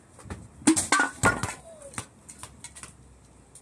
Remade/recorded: recorded